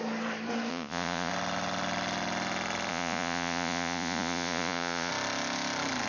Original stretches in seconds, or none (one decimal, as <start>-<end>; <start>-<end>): 0.0-0.7; 1.3-2.9; 5.1-6.1